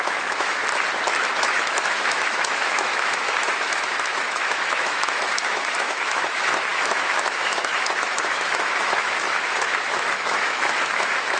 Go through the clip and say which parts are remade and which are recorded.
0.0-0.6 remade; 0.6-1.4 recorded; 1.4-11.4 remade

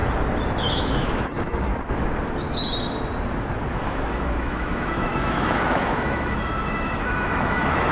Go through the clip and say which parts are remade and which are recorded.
0.0-0.6 recorded; 0.6-1.7 remade; 1.7-3.7 recorded; 3.7-7.9 remade

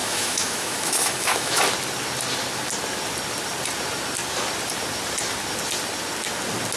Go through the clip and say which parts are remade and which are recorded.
0.0-1.6 remade; 1.6-6.8 recorded

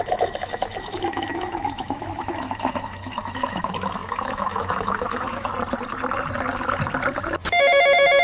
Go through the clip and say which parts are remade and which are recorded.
0.0-5.5 remade; 5.5-7.6 recorded; 7.6-8.2 remade

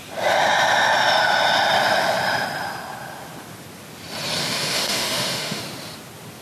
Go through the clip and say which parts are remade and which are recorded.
0.0-4.4 recorded; 4.4-5.6 remade; 5.6-6.4 recorded

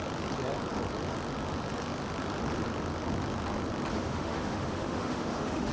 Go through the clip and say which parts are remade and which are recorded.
0.0-3.9 recorded; 3.9-5.7 remade

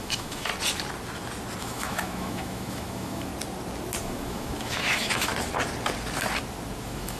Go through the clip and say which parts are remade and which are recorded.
0.0-0.5 remade; 0.5-1.6 recorded; 1.6-3.3 remade; 3.3-4.0 recorded; 4.0-5.3 remade; 5.3-6.8 recorded; 6.8-7.2 remade

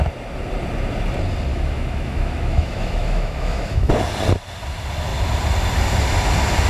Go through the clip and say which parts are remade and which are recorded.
0.0-1.5 recorded; 1.5-3.9 remade; 3.9-6.7 recorded